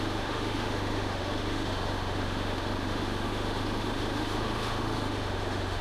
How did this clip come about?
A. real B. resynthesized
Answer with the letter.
B